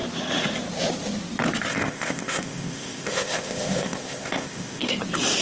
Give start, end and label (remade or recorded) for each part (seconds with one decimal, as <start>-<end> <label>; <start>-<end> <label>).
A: 0.0-1.7 recorded; 1.7-4.9 remade; 4.9-5.4 recorded